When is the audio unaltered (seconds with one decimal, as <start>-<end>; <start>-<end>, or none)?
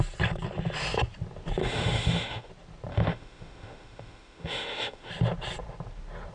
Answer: 0.0-1.6; 2.5-2.9; 5.1-6.3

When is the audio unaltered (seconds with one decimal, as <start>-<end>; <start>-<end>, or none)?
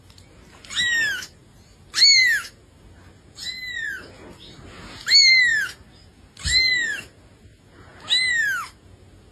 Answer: 0.0-9.3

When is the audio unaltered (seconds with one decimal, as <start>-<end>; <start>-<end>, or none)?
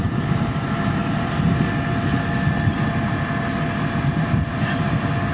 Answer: 1.0-4.2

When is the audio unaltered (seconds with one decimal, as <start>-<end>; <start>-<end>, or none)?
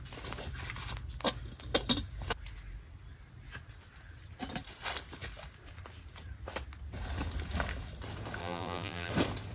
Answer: 0.0-8.4; 9.1-9.5